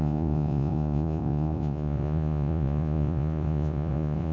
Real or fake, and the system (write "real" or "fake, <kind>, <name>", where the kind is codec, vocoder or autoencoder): fake, vocoder, Vocos